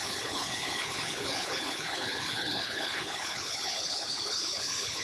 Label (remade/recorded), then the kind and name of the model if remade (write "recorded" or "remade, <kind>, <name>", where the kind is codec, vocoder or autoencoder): remade, codec, HILCodec